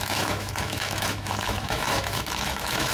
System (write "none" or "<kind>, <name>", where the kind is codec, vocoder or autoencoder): autoencoder, DAC-VAE